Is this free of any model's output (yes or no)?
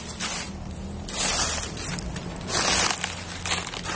yes